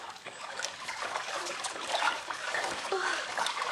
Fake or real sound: fake